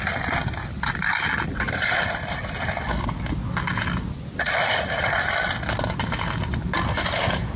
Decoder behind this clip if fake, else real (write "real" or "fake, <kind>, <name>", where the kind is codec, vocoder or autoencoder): real